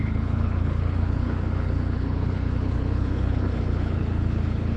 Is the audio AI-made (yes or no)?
yes